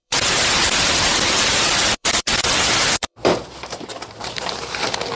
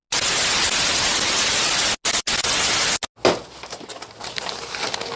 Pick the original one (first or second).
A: second